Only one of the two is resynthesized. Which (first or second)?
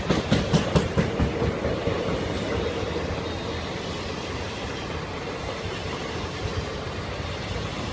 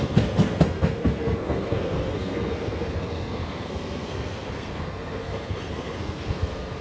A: second